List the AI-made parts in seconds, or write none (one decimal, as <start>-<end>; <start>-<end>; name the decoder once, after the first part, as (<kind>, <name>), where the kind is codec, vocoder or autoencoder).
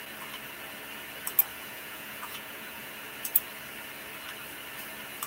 1.5-2.9 (vocoder, Vocos)